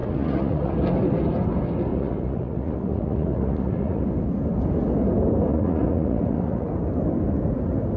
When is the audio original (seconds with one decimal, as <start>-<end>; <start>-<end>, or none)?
0.7-1.9; 4.0-5.5; 6.7-8.0